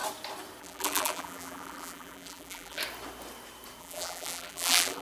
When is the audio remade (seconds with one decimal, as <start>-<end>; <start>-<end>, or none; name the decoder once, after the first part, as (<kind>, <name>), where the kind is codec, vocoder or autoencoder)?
0.6-2.8 (vocoder, BigVGAN v2); 3.8-5.0